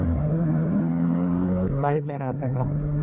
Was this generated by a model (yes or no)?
yes